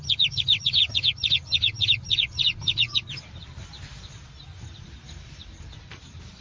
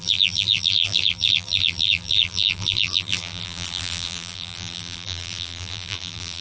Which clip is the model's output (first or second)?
second